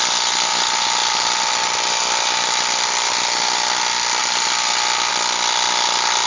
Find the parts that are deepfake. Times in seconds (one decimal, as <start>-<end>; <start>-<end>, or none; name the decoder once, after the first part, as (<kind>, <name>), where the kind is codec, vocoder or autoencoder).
1.0-3.1 (vocoder, BigVGAN v2)